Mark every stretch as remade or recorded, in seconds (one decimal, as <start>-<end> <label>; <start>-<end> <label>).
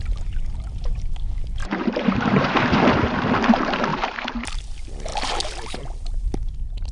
0.0-1.6 recorded; 1.6-2.5 remade; 2.5-3.9 recorded; 3.9-4.6 remade; 4.6-6.9 recorded